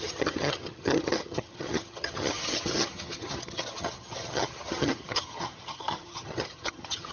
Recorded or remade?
remade